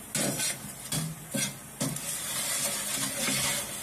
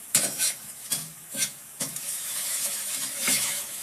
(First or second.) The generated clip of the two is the second